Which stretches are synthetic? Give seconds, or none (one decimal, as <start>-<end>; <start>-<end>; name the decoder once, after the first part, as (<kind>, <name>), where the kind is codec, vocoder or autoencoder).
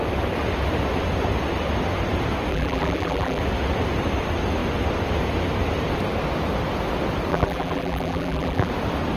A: 2.5-3.4 (vocoder, BigVGAN v2); 7.3-8.7